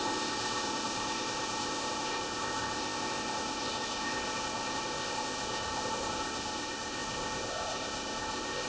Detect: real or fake fake